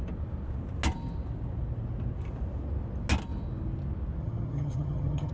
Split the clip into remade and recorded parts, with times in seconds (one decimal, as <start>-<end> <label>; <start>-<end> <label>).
0.0-4.2 recorded; 4.2-5.3 remade